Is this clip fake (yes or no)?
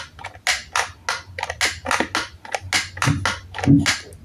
no